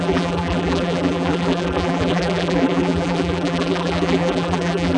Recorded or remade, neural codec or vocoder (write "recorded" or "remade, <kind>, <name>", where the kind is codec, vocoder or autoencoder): remade, vocoder, BigVGAN v2